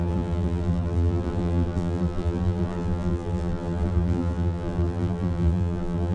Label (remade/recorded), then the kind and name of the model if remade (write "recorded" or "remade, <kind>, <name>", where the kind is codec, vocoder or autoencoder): remade, vocoder, BigVGAN v2